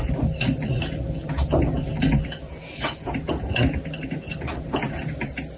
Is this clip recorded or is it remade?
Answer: recorded